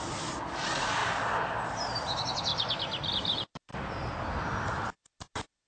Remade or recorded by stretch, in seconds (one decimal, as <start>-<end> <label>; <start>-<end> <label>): 0.0-1.0 remade; 1.0-1.7 recorded; 1.7-2.5 remade; 2.5-3.1 recorded; 3.1-3.7 remade; 3.7-4.3 recorded; 4.3-5.7 remade